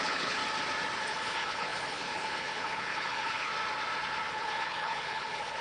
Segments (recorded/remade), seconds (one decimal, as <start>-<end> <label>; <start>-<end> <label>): 0.0-0.4 remade; 0.4-1.0 recorded; 1.0-3.5 remade; 3.5-4.3 recorded; 4.3-5.6 remade

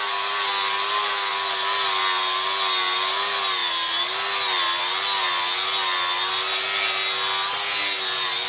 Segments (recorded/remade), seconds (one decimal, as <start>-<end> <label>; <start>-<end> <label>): 0.0-8.5 recorded

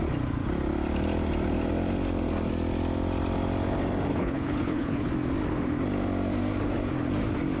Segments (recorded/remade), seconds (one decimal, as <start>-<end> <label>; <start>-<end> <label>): 0.0-4.1 recorded; 4.1-5.1 remade; 5.1-7.6 recorded